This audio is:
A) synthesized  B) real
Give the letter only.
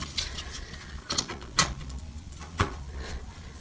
A